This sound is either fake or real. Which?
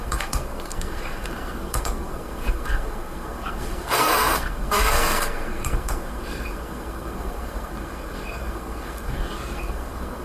fake